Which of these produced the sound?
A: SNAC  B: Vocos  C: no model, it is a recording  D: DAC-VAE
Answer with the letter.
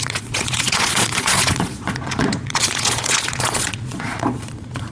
B